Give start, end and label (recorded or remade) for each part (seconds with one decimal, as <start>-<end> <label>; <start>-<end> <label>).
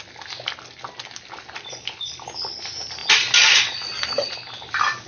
0.0-5.1 recorded